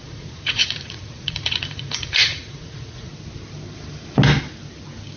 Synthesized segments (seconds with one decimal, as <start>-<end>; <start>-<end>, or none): 0.0-3.1